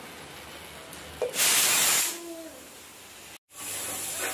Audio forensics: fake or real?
real